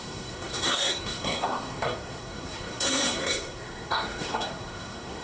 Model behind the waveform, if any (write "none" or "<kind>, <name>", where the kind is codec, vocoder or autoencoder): codec, SNAC